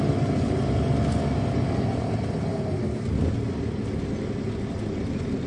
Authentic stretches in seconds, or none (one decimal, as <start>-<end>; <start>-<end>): 0.0-5.5